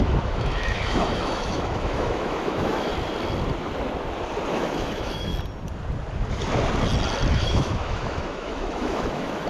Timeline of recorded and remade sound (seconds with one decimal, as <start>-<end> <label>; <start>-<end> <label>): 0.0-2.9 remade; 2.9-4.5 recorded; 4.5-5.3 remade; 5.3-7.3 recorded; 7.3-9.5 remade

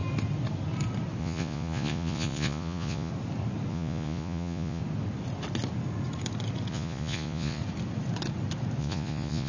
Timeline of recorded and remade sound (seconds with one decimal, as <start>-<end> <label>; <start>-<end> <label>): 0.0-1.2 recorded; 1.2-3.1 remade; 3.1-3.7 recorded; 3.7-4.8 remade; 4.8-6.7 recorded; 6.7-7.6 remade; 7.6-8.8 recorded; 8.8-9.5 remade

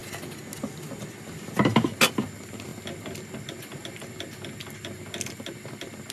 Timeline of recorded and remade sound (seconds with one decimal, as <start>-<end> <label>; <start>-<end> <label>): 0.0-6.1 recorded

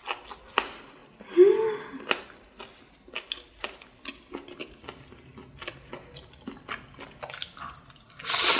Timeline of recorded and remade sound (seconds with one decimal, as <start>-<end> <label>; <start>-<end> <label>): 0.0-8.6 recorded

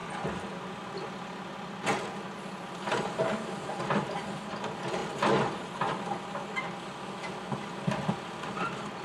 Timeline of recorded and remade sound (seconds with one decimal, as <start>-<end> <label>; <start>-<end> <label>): 0.0-9.0 recorded

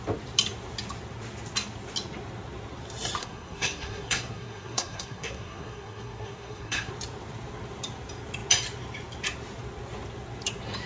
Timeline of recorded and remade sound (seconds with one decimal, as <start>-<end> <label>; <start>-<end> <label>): 0.0-3.2 recorded; 3.2-6.9 remade; 6.9-10.9 recorded

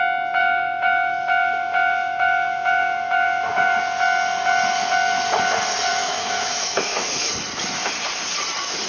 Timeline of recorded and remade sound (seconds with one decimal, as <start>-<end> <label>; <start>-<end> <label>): 0.0-0.4 recorded; 0.4-3.8 remade; 3.8-5.9 recorded; 5.9-7.3 remade; 7.3-8.9 recorded

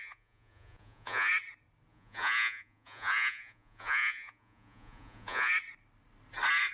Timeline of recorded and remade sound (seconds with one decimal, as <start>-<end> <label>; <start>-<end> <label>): 0.0-1.3 remade; 1.3-1.9 recorded; 1.9-5.5 remade; 5.5-6.7 recorded